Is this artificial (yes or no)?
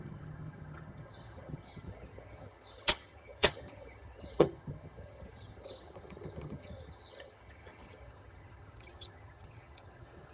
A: yes